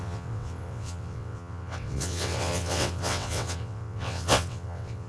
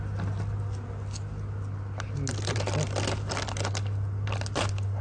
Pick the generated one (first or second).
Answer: first